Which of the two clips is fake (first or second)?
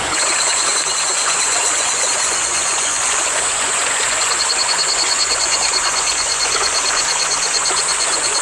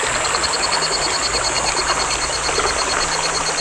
first